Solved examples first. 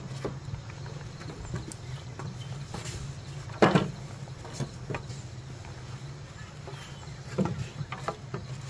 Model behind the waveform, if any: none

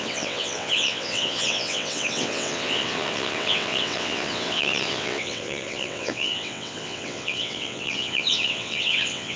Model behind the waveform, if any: vocoder, WaveNeXt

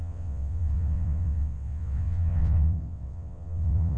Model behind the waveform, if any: vocoder, WaveNeXt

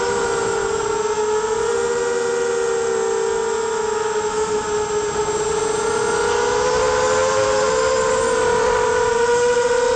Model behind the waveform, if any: none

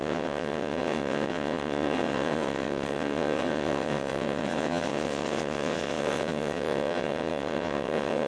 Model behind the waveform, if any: vocoder, WaveNeXt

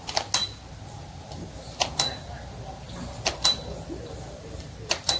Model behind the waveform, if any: none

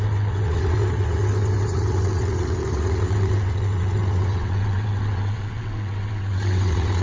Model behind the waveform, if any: vocoder, WaveNeXt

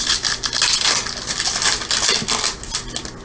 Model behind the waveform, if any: none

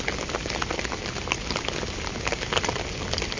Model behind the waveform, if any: none